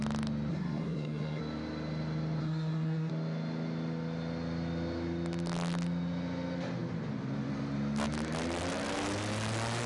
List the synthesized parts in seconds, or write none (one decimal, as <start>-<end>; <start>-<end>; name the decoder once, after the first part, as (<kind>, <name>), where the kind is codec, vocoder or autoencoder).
0.5-1.4 (codec, SNAC); 2.4-3.1